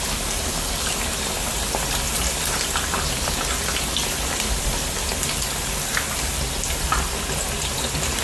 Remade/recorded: recorded